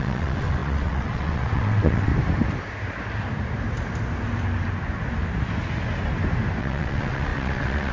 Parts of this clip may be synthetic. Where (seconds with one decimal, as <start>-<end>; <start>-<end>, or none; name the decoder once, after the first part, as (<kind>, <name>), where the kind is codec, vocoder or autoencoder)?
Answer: 0.0-2.1 (vocoder, WaveNeXt); 6.6-7.9